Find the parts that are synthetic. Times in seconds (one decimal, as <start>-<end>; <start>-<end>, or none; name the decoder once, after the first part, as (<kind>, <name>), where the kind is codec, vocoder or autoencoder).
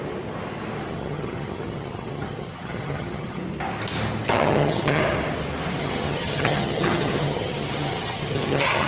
0.9-3.4 (vocoder, HiFi-GAN); 4.3-5.0; 5.8-8.9